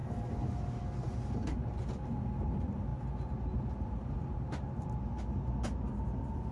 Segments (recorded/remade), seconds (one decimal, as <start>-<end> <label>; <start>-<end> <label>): 0.0-6.5 recorded

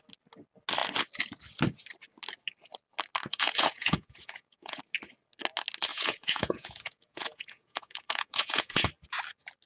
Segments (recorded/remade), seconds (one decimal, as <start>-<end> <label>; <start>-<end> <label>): 0.0-3.3 recorded; 3.3-4.8 remade; 4.8-5.9 recorded; 5.9-8.9 remade; 8.9-9.7 recorded

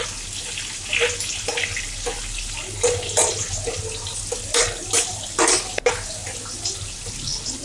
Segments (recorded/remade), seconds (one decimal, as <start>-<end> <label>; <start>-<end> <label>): 0.0-7.6 recorded